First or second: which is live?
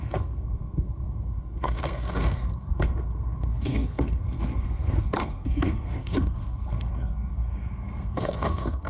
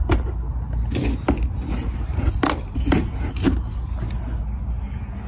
second